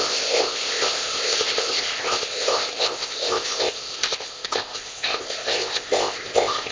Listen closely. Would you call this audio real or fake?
fake